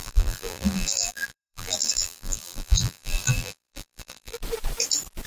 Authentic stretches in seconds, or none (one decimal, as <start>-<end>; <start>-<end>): 4.4-5.3